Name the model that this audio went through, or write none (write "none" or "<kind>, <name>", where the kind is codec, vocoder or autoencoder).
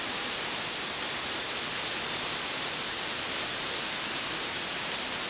none